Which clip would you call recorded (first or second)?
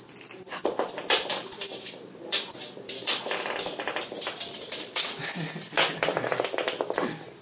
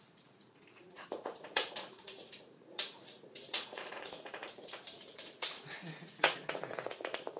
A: first